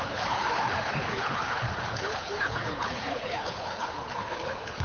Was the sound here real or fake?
fake